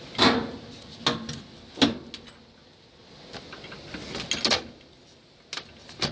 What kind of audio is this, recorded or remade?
recorded